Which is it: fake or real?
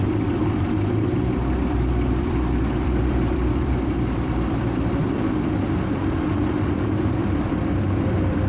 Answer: fake